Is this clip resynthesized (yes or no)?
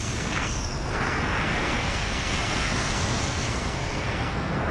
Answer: yes